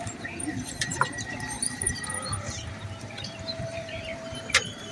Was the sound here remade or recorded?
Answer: remade